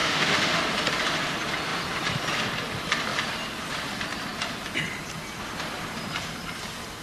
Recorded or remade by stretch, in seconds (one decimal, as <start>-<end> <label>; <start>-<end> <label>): 0.0-0.6 remade; 0.6-7.0 recorded